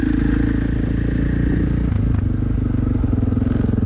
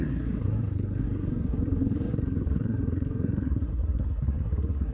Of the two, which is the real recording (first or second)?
first